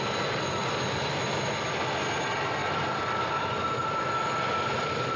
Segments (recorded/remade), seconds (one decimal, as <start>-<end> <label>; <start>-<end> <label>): 0.0-0.6 recorded; 0.6-1.8 remade; 1.8-2.6 recorded; 2.6-3.3 remade; 3.3-5.2 recorded

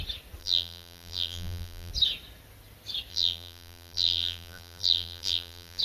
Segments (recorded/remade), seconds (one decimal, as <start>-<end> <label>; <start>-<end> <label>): 0.0-0.4 recorded; 0.4-1.9 remade; 1.9-3.1 recorded; 3.1-5.8 remade

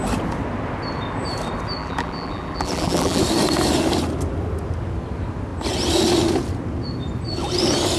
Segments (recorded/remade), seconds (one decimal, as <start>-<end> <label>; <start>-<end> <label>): 0.0-1.8 recorded; 1.8-3.2 remade; 3.2-8.0 recorded

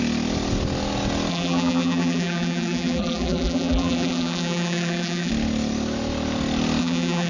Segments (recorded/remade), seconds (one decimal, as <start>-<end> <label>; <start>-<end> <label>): 0.0-1.3 recorded; 1.3-5.3 remade; 5.3-6.8 recorded; 6.8-7.3 remade

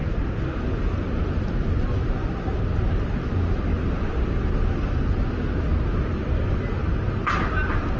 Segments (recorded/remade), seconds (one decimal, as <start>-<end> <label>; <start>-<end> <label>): 0.0-1.4 remade; 1.4-3.7 recorded; 3.7-4.4 remade; 4.4-6.8 recorded; 6.8-7.4 remade; 7.4-8.0 recorded